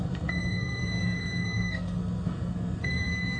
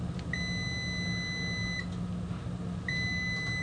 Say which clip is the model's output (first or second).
first